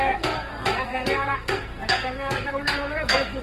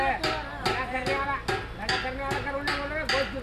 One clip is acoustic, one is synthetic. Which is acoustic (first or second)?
second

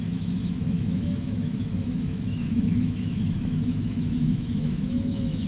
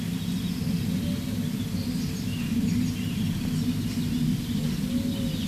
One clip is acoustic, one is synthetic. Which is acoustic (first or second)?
second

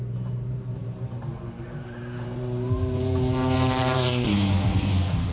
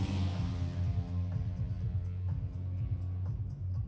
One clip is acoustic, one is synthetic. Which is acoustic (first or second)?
second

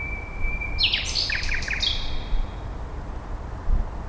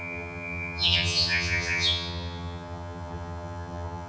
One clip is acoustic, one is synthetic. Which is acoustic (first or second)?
first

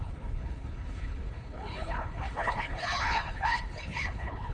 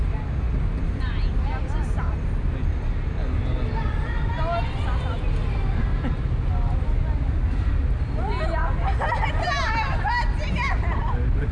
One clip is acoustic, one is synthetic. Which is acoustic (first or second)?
second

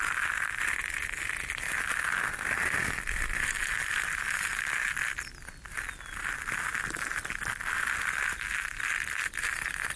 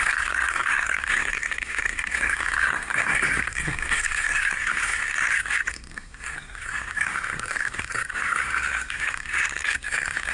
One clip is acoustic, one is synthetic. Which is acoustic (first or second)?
first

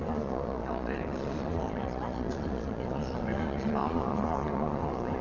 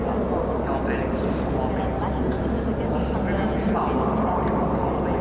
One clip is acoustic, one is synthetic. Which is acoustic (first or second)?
second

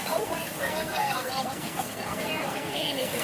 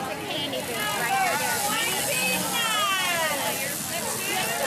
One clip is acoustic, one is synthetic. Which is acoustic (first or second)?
second